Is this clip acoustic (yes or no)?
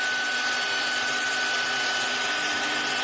yes